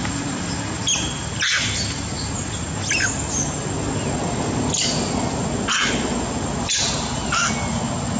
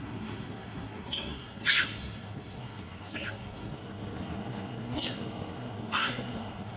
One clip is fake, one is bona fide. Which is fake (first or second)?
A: second